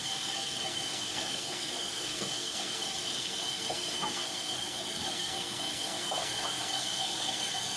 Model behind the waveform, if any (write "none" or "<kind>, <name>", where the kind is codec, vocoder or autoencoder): codec, SNAC